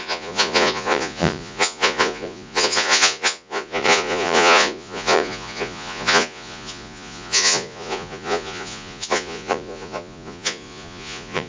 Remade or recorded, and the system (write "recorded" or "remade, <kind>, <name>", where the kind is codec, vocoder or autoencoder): remade, vocoder, Vocos